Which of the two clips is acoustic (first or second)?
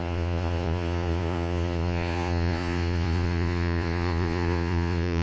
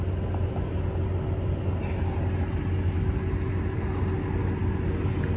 second